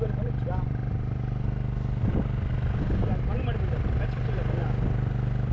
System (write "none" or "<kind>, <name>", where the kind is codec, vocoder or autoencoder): none